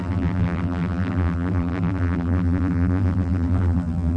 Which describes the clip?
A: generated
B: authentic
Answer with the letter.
A